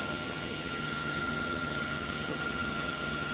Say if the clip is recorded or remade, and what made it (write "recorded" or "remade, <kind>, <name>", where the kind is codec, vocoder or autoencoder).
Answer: remade, vocoder, HiFi-GAN